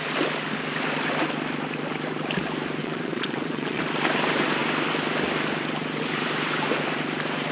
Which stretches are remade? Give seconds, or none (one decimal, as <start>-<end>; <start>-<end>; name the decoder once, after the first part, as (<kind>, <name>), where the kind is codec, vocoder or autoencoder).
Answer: 2.8-3.8 (vocoder, Vocos)